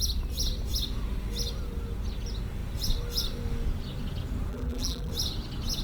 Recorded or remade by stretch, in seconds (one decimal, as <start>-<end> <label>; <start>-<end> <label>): 0.0-4.5 recorded; 4.5-5.1 remade; 5.1-5.8 recorded